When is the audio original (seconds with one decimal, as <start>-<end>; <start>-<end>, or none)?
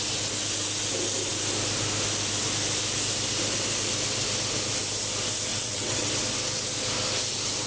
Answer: 0.0-5.5; 6.1-7.7